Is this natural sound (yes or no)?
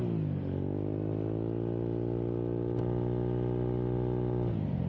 yes